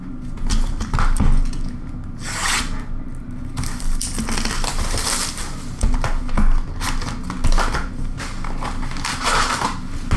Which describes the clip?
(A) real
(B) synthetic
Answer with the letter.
A